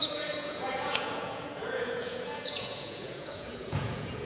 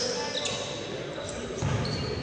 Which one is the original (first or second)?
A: second